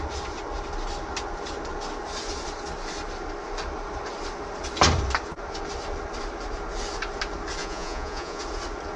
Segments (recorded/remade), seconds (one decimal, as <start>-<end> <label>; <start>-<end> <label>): 0.0-7.6 recorded; 7.6-8.4 remade; 8.4-9.0 recorded